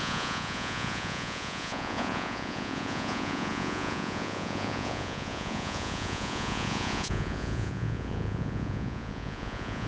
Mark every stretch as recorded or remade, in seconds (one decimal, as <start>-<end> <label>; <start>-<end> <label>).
0.0-9.9 remade